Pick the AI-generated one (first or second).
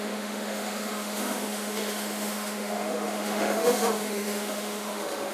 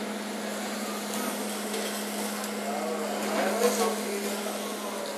first